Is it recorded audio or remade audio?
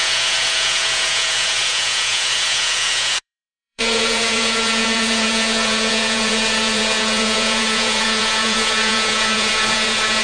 remade